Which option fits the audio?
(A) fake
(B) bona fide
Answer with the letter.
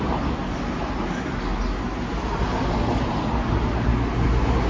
B